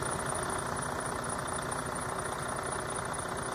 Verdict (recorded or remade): recorded